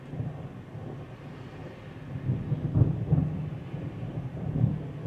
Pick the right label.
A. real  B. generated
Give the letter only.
A